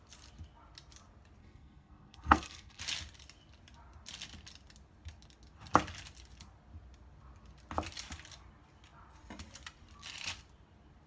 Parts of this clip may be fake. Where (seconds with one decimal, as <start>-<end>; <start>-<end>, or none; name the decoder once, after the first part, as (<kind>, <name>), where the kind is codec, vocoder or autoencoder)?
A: 1.4-2.8 (codec, SNAC)